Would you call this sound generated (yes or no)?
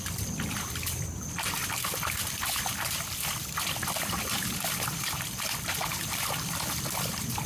no